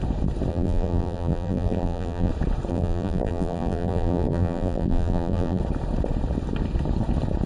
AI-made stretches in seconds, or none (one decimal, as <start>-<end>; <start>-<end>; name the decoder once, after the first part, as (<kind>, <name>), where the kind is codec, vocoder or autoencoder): 0.5-2.3 (vocoder, BigVGAN v2); 2.7-5.6